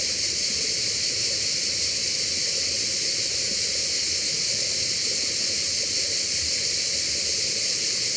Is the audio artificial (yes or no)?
no